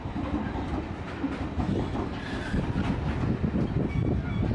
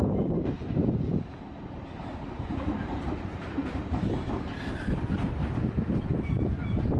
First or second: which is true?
first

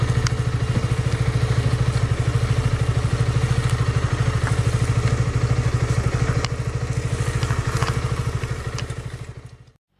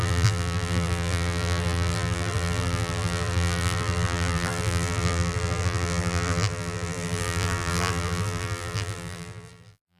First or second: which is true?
first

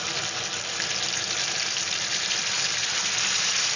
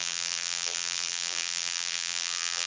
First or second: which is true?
first